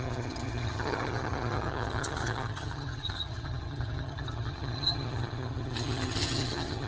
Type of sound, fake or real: fake